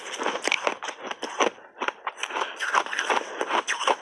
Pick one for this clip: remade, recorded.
recorded